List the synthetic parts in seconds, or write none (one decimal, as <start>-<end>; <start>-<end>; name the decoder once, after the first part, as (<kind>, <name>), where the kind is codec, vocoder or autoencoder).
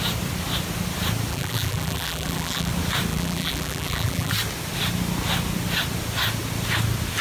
1.3-2.7 (vocoder, BigVGAN v2); 3.1-4.3